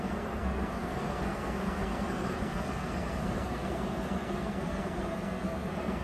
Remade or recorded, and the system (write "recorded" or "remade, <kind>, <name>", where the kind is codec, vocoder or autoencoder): remade, codec, SNAC